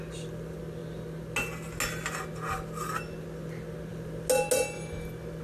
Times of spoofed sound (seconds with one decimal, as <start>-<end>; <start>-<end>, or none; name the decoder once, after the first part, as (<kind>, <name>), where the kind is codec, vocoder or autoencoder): none

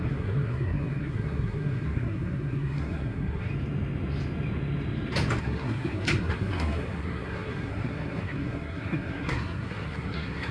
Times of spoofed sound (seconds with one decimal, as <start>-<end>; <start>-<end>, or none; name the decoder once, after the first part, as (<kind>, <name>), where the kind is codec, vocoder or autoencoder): 0.0-3.5 (codec, SNAC); 5.4-10.5

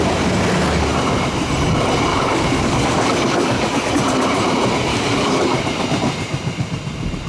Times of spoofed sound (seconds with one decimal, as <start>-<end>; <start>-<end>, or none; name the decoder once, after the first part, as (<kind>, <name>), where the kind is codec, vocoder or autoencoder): 2.1-3.9 (codec, DAC); 4.9-5.4

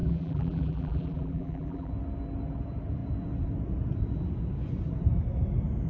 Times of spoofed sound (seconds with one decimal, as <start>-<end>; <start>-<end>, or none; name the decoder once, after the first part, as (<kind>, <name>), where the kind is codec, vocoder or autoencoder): 0.0-1.9 (vocoder, BigVGAN v2)

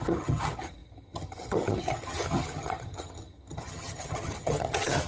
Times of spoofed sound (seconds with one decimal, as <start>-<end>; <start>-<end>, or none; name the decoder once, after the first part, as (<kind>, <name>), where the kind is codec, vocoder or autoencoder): 0.0-5.1 (vocoder, HiFi-GAN)

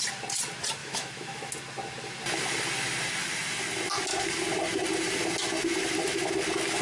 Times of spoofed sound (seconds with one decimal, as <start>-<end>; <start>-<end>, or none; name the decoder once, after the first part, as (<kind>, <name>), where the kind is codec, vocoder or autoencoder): 0.8-1.5 (autoencoder, DAC-VAE)